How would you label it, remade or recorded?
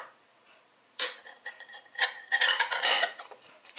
remade